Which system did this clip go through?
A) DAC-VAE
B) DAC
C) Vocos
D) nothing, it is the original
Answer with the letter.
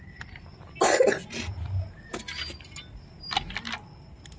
D